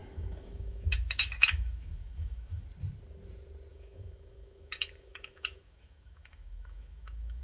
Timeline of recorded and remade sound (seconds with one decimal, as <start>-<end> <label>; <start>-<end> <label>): 0.0-2.6 remade; 2.6-3.7 recorded; 3.7-7.4 remade